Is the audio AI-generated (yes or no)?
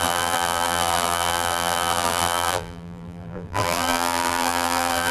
yes